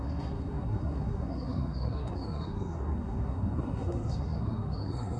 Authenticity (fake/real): fake